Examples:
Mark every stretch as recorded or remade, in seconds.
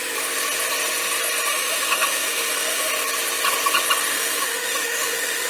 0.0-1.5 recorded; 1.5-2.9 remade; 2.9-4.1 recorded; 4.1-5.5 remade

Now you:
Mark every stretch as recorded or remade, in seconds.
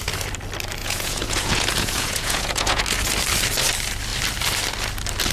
0.0-0.8 recorded; 0.8-2.8 remade; 2.8-5.3 recorded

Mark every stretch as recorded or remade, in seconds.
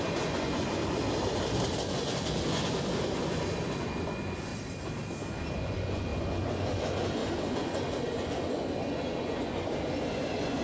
0.0-0.8 remade; 0.8-1.8 recorded; 1.8-4.5 remade; 4.5-5.4 recorded; 5.4-10.6 remade